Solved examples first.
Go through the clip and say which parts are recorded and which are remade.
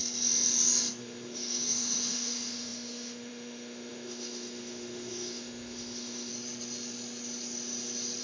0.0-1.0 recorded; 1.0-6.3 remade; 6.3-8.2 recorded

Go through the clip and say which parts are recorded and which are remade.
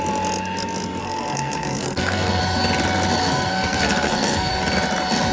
0.0-1.0 recorded; 1.0-2.4 remade; 2.4-3.2 recorded; 3.2-4.5 remade; 4.5-5.3 recorded